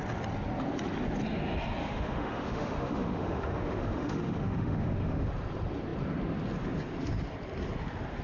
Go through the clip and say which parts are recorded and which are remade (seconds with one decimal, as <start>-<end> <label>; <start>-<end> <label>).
0.0-1.8 recorded; 1.8-5.3 remade; 5.3-8.2 recorded